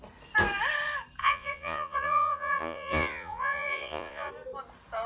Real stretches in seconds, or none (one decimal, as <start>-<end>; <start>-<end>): 0.0-1.2; 4.3-5.1